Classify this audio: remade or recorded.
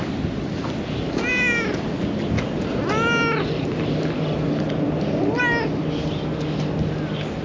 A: recorded